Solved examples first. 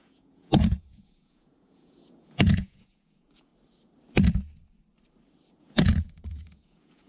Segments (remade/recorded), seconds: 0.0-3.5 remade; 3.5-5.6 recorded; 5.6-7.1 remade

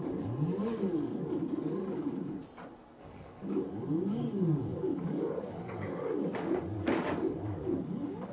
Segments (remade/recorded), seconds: 0.0-2.4 remade; 2.4-3.0 recorded; 3.0-8.3 remade

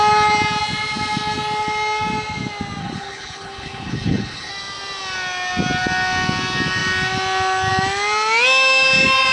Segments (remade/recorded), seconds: 0.0-2.8 recorded; 2.8-4.5 remade; 4.5-9.3 recorded

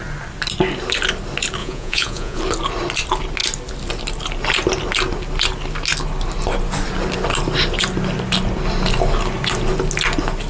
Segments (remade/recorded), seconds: 0.0-1.6 recorded; 1.6-2.4 remade; 2.4-10.5 recorded

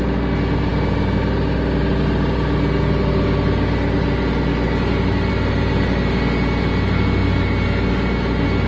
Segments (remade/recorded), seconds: 0.0-8.7 recorded

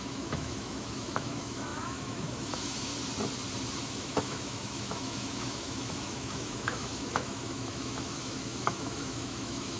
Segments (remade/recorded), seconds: 0.0-2.9 remade; 2.9-3.8 recorded; 3.8-9.8 remade

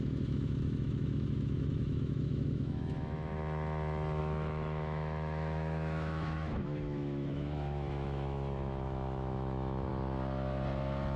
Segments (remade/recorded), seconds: 0.0-3.4 remade; 3.4-4.2 recorded; 4.2-9.9 remade; 9.9-11.2 recorded